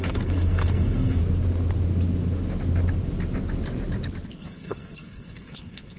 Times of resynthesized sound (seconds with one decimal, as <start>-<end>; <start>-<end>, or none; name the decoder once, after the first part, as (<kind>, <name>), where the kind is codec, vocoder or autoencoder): 0.0-1.2 (codec, SNAC); 4.3-6.0